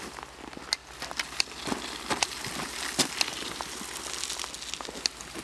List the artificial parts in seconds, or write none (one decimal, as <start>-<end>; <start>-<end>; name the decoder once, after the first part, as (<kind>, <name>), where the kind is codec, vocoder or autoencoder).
0.8-4.0 (vocoder, BigVGAN v2)